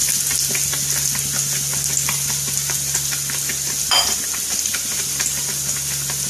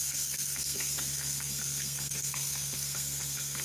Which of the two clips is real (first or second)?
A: first